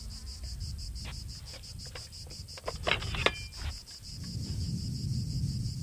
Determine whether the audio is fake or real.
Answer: real